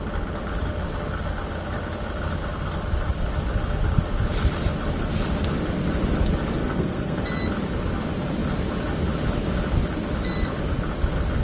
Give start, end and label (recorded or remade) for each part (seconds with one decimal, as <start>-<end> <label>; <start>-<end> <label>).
0.0-6.6 recorded; 6.6-7.2 remade; 7.2-11.4 recorded